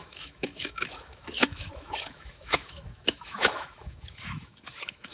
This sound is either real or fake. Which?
fake